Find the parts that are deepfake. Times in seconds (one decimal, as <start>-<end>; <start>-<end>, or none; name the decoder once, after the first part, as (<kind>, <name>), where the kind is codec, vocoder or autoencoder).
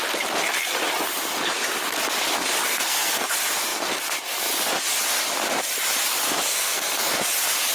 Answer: 2.7-3.3 (codec, SNAC); 6.5-7.1